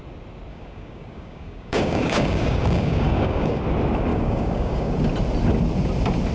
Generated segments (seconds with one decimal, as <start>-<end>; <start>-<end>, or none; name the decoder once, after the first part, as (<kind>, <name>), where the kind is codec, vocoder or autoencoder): 0.5-3.6 (codec, DAC); 4.1-4.9

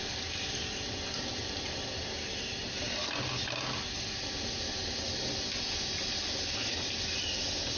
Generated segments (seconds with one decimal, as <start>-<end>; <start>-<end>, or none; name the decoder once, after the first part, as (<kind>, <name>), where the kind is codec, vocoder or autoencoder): none

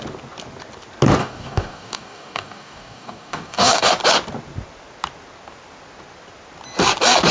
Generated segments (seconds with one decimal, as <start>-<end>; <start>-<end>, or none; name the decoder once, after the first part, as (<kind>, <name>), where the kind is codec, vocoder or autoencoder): 1.2-3.9 (codec, DAC)

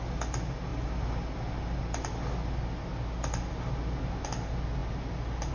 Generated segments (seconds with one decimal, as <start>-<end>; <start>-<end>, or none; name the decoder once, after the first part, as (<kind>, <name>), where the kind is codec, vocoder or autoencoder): none

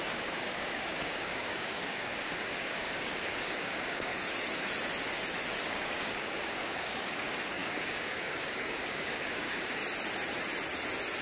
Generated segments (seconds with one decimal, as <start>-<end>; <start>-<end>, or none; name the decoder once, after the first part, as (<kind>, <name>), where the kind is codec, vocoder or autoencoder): 0.0-4.1 (codec, DAC); 5.7-9.8

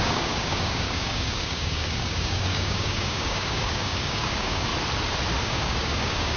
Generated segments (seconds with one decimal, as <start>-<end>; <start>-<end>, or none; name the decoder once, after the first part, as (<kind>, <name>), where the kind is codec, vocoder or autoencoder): 0.0-4.7 (codec, DAC); 5.4-6.4